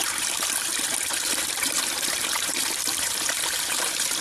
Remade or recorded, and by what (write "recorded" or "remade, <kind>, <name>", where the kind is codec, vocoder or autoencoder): remade, vocoder, BigVGAN v2